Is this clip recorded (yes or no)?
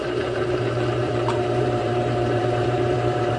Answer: no